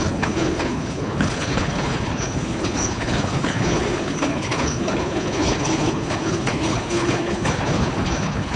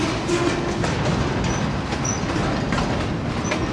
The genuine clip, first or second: second